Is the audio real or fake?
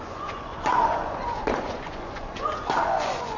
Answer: fake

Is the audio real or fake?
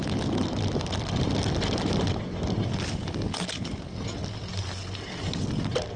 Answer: real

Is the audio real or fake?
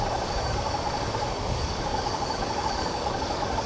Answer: fake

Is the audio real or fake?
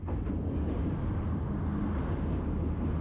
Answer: real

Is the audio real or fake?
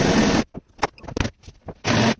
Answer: real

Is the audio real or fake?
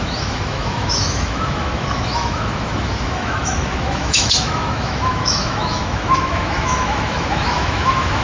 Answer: fake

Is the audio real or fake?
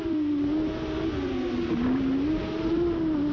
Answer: real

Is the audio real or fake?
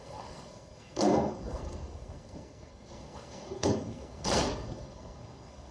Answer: fake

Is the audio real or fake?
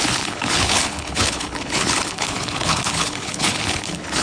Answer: fake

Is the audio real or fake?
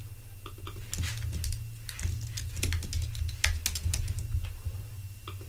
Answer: real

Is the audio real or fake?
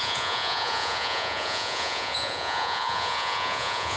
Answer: fake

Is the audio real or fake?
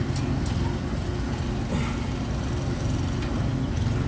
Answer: real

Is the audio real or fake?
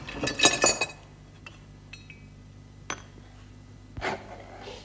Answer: real